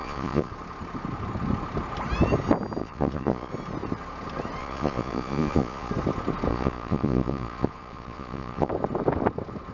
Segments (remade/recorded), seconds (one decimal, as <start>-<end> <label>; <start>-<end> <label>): 0.0-0.5 remade; 0.5-2.8 recorded; 2.8-3.5 remade; 3.5-4.6 recorded; 4.6-5.9 remade; 5.9-6.5 recorded; 6.5-8.7 remade; 8.7-9.7 recorded